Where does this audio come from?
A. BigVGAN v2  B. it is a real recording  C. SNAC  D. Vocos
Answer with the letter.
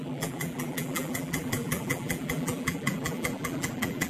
A